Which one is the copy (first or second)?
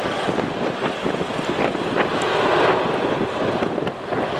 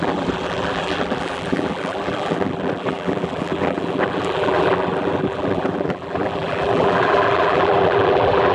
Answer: second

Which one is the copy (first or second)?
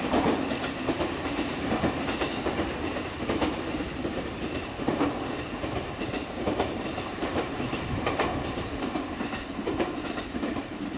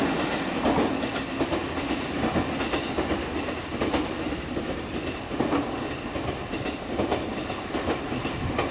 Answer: first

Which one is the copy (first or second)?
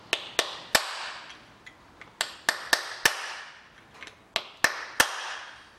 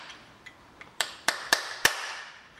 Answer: second